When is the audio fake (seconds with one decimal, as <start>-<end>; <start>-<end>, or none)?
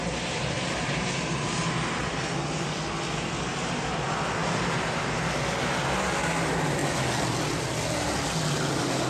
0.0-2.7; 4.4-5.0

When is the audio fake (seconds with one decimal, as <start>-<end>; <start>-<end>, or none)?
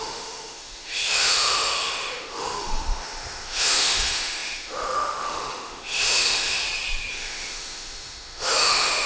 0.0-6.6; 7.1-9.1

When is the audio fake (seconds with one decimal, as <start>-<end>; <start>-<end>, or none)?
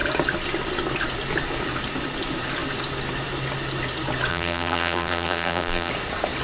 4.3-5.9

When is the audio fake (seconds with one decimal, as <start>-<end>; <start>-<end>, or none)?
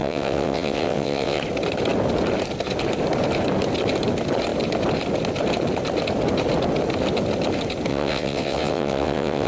0.0-1.4; 7.9-9.5